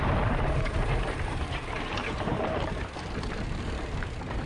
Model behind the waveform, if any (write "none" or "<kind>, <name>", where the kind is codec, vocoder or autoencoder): vocoder, BigVGAN v2